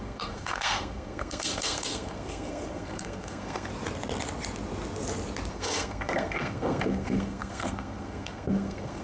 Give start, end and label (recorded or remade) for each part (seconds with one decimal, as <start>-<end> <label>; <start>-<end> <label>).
0.0-3.7 remade; 3.7-5.5 recorded; 5.5-9.0 remade